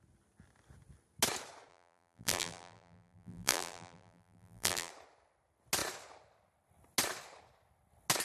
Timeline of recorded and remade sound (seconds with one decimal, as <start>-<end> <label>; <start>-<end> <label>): 0.0-1.7 recorded; 1.7-4.9 remade; 4.9-8.2 recorded